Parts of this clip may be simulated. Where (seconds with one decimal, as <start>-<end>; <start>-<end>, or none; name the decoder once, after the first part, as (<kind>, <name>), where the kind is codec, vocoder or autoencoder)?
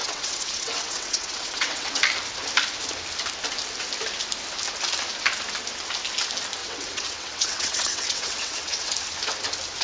0.0-2.0 (vocoder, WaveNeXt); 6.6-8.9